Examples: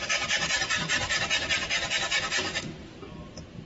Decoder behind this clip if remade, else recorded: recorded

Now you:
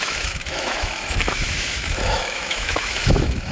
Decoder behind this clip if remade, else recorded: remade, autoencoder, DAC-VAE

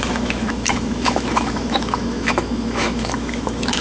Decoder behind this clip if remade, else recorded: remade, autoencoder, DAC-VAE